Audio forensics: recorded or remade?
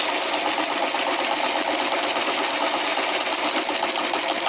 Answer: recorded